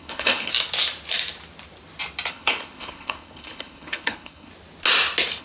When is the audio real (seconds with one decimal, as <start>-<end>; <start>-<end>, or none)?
0.5-2.3; 4.5-5.4

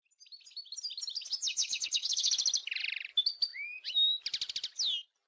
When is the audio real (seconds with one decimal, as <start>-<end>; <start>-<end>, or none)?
0.0-1.5; 2.4-5.3

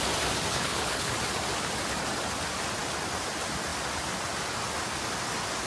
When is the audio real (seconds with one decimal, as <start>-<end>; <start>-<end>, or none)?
0.0-0.5; 1.1-5.7

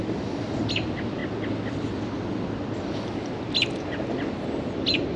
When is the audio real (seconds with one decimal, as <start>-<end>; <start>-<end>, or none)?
0.0-5.2

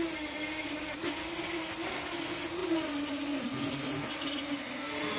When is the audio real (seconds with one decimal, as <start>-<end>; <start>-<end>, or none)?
0.0-5.2

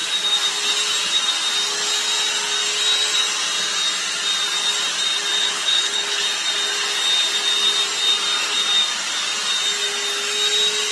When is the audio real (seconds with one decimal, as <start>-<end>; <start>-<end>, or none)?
0.0-5.4; 6.2-10.9

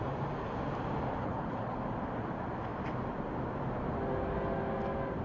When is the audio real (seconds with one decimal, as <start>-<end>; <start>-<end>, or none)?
0.0-1.2; 1.8-5.2

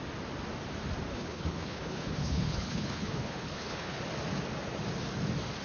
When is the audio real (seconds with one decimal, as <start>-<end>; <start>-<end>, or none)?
0.0-1.1; 4.0-5.6